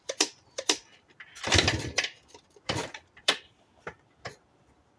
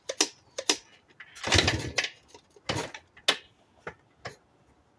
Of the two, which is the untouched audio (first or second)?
second